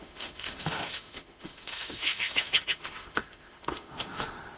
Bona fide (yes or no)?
no